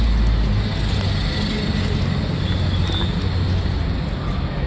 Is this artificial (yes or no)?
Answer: no